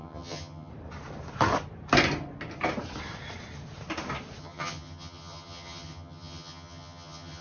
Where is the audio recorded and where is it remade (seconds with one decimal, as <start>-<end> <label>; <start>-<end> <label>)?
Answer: 0.0-0.7 remade; 0.7-4.4 recorded; 4.4-7.4 remade